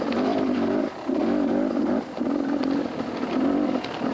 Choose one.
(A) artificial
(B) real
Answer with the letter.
B